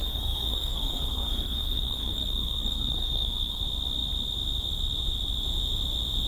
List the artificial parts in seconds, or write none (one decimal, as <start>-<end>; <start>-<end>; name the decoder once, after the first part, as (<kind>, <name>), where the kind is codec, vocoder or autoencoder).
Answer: 0.0-3.6 (codec, SNAC)